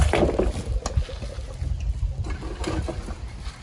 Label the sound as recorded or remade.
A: recorded